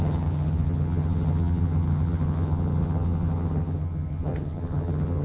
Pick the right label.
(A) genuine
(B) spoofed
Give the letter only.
B